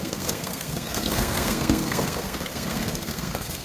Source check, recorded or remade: remade